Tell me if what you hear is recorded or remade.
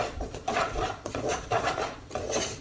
remade